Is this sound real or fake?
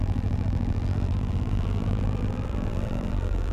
fake